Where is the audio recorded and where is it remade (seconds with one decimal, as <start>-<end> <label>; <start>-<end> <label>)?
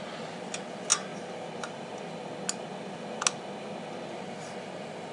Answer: 0.0-5.1 recorded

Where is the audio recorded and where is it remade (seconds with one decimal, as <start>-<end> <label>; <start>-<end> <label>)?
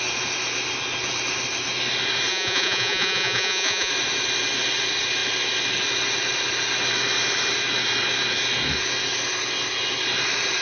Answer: 0.0-2.3 recorded; 2.3-3.9 remade; 3.9-10.6 recorded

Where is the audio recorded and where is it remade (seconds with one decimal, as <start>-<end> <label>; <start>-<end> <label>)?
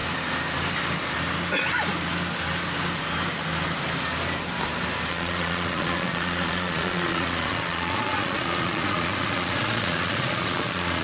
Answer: 0.0-5.1 recorded; 5.1-11.0 remade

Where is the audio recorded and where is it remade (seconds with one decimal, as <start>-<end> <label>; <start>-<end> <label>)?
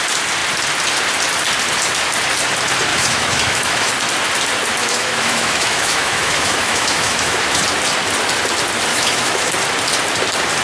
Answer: 0.0-2.9 recorded; 2.9-3.9 remade; 3.9-4.8 recorded; 4.8-7.6 remade; 7.6-8.9 recorded; 8.9-9.5 remade; 9.5-10.6 recorded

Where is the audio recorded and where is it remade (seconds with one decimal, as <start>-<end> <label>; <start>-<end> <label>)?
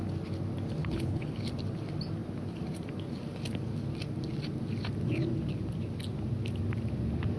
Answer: 0.0-0.8 recorded; 0.8-1.3 remade; 1.3-7.4 recorded